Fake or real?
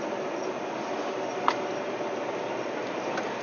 real